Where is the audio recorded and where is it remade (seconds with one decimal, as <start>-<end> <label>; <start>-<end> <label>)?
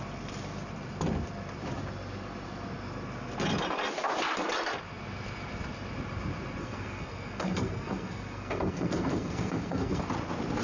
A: 0.0-6.6 recorded; 6.6-10.0 remade; 10.0-10.6 recorded